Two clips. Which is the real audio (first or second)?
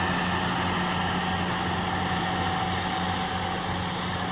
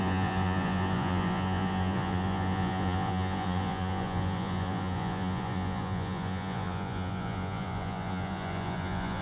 first